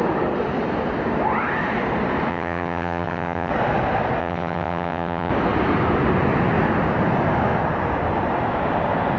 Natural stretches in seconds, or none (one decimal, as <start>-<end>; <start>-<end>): 0.0-2.3; 3.5-4.2; 5.3-9.2